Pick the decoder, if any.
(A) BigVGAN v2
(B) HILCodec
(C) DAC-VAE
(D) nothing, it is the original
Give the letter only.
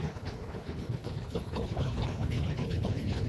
B